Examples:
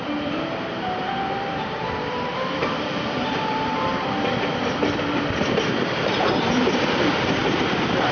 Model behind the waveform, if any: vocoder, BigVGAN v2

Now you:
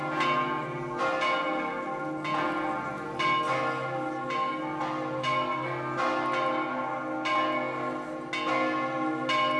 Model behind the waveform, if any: none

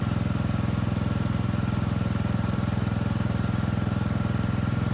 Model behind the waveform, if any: vocoder, BigVGAN v2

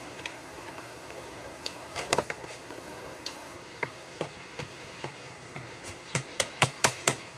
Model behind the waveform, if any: codec, SNAC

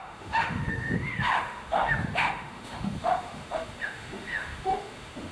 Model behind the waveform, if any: autoencoder, DAC-VAE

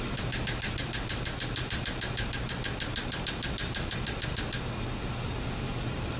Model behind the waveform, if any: none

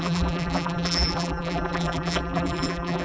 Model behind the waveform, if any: vocoder, BigVGAN v2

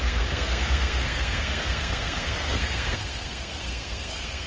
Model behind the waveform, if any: codec, SNAC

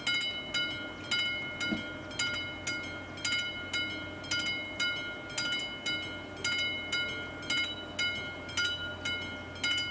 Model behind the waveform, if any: none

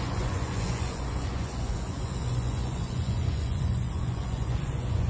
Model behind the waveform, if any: vocoder, Vocos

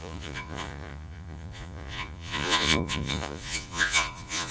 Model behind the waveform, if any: vocoder, Vocos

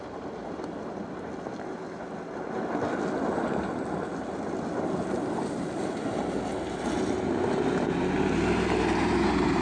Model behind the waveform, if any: none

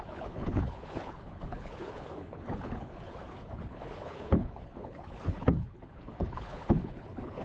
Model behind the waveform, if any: codec, HILCodec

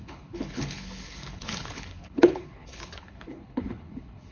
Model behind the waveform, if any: codec, HILCodec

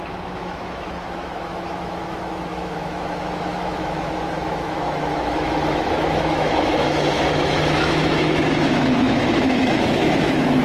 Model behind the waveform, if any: autoencoder, DAC-VAE